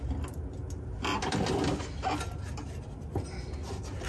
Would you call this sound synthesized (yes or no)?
no